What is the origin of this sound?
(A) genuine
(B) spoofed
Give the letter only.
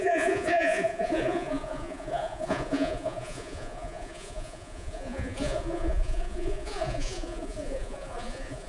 B